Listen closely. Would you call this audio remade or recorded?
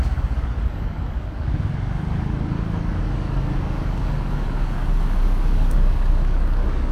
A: remade